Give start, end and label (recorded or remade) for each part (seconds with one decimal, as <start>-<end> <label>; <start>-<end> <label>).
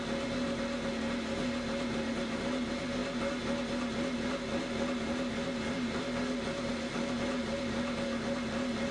0.0-8.9 recorded